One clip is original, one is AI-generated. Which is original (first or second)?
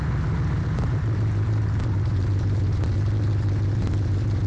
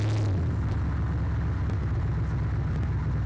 second